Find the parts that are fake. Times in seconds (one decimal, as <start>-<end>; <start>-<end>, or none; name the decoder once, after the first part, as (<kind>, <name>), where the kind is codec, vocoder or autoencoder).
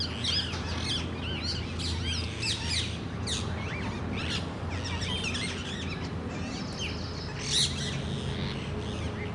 none